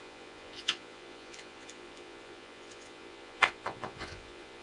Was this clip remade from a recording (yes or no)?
yes